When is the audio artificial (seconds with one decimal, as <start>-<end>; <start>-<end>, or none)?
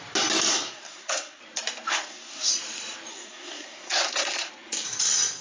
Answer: 0.5-1.4; 1.9-2.5; 3.1-4.5